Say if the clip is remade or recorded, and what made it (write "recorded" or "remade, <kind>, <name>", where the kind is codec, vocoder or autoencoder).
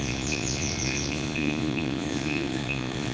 remade, vocoder, Vocos